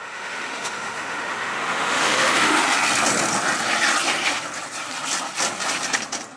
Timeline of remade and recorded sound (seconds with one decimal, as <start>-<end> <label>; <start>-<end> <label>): 0.0-2.6 remade; 2.6-6.4 recorded